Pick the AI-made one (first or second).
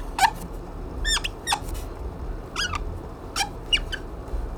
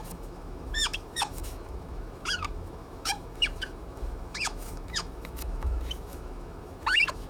second